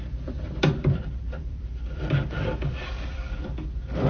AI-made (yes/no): yes